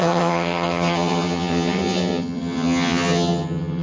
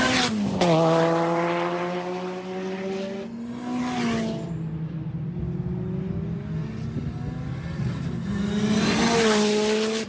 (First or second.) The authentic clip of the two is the second